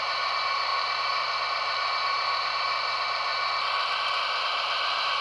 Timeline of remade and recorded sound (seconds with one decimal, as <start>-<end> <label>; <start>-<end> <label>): 0.0-3.3 remade; 3.3-4.4 recorded; 4.4-5.2 remade